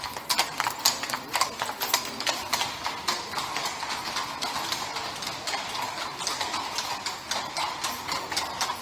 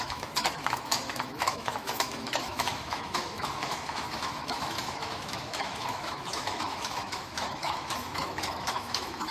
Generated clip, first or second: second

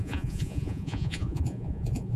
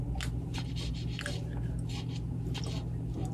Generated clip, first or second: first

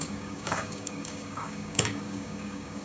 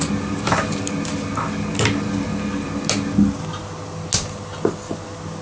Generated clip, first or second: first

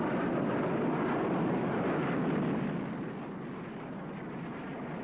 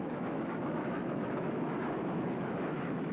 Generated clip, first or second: second